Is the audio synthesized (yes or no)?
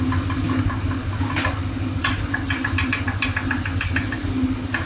no